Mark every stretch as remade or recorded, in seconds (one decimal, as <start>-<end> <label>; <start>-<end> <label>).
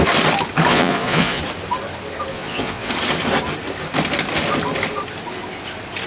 0.0-0.7 recorded; 0.7-1.4 remade; 1.4-2.3 recorded; 2.3-2.9 remade; 2.9-6.1 recorded